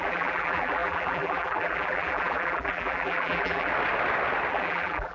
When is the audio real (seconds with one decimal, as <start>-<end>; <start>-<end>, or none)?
3.7-4.5

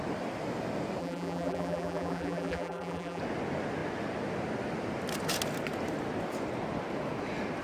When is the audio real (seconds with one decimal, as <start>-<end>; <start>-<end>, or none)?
0.0-1.0; 3.2-7.6

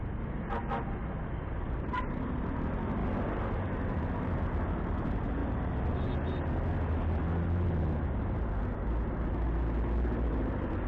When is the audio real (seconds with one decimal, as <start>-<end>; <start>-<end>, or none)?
0.0-10.9

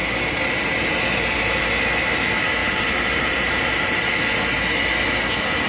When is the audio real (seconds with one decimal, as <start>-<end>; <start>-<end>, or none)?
0.0-2.6; 4.1-5.7